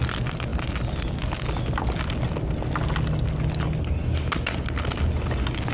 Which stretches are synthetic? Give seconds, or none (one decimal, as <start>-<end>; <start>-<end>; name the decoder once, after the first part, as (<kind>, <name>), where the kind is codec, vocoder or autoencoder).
none